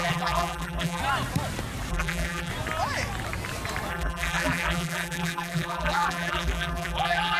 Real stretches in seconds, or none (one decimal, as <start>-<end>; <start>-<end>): 1.0-1.9; 2.5-3.9